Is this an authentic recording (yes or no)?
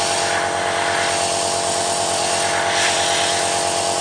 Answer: no